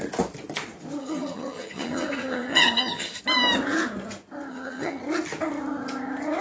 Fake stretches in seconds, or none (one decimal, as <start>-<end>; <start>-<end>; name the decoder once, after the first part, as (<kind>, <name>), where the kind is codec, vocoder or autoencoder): 1.0-3.2 (vocoder, HiFi-GAN); 4.5-5.0